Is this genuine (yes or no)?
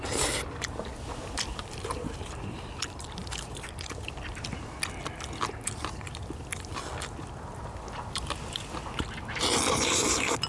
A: no